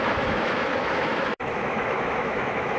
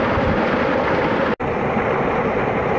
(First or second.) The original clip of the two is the second